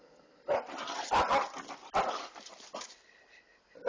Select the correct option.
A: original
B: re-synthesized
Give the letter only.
A